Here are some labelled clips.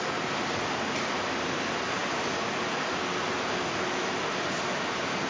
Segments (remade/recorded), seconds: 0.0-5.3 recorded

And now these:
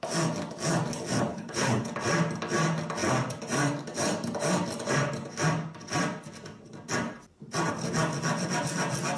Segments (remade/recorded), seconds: 0.0-1.3 recorded; 1.3-1.9 remade; 1.9-9.2 recorded

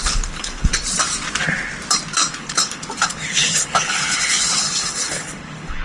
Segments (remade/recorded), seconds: 0.0-0.8 remade; 0.8-2.3 recorded; 2.3-5.8 remade

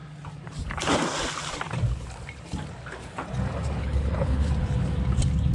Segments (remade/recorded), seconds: 0.0-3.8 recorded; 3.8-4.5 remade; 4.5-5.5 recorded

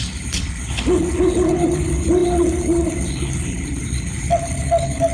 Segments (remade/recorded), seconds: 0.0-5.1 remade